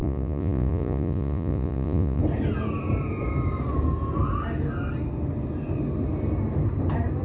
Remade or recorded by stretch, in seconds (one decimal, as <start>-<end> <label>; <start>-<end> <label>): 0.0-2.2 remade; 2.2-7.2 recorded